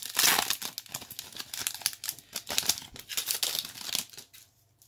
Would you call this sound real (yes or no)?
yes